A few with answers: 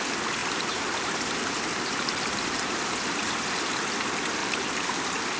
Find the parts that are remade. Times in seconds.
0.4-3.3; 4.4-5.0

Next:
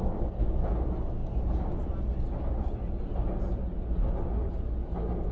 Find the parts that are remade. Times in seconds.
none